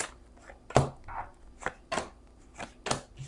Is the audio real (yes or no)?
yes